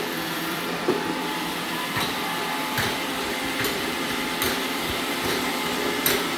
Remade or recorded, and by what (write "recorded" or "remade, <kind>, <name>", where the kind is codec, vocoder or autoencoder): remade, vocoder, BigVGAN v2